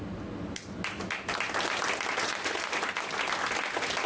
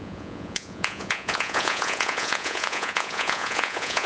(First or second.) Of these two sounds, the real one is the first